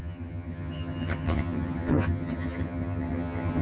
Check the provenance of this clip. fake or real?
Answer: fake